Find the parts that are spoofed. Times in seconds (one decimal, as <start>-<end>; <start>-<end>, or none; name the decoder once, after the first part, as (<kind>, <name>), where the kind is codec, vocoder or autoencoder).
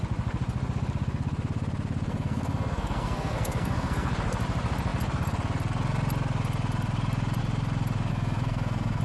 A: 2.1-4.1 (codec, SNAC); 8.1-9.0